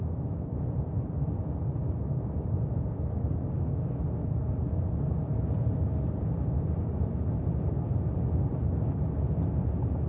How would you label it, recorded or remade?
recorded